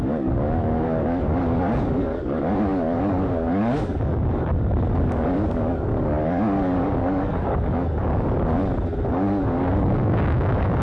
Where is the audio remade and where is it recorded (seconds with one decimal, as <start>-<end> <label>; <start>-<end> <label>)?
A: 0.0-4.5 remade; 4.5-5.0 recorded; 5.0-8.6 remade; 8.6-9.1 recorded; 9.1-10.8 remade